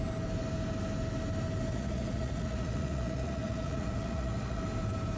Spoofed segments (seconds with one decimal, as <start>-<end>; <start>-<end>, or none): 1.7-4.6